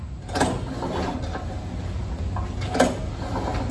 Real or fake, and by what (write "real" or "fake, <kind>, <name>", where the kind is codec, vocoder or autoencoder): real